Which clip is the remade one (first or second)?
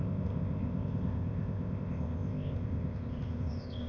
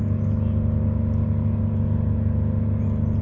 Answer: first